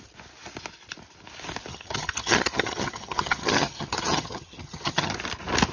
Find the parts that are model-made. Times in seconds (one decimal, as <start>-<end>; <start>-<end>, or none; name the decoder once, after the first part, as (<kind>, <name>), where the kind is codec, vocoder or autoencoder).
1.7-5.1 (vocoder, HiFi-GAN)